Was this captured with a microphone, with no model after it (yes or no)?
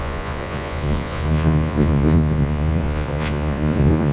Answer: no